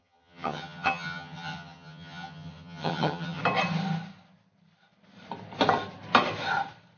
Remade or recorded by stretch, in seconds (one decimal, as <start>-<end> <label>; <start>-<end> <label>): 0.0-3.4 remade; 3.4-7.0 recorded